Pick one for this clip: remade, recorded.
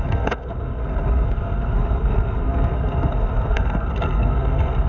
remade